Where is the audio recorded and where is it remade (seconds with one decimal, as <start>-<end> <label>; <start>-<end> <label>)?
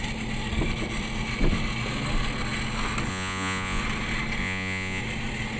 0.0-3.1 recorded; 3.1-3.8 remade; 3.8-4.4 recorded; 4.4-5.0 remade; 5.0-5.6 recorded